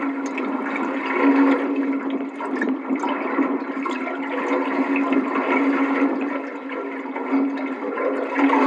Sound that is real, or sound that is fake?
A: real